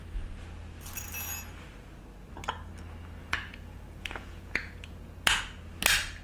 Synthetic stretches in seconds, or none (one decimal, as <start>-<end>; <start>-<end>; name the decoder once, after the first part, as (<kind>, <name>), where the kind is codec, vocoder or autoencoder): 3.2-5.4 (vocoder, Vocos)